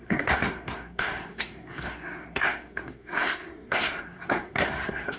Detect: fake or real fake